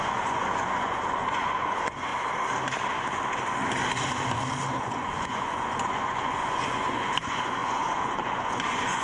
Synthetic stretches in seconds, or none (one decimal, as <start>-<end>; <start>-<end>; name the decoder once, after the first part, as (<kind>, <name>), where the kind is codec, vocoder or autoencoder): 0.0-2.1 (vocoder, Vocos); 4.8-9.0